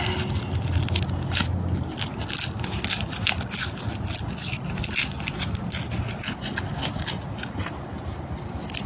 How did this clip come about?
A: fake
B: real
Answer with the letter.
B